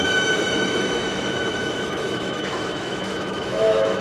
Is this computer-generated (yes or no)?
yes